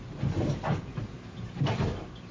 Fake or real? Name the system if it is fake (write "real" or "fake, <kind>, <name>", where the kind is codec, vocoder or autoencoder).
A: real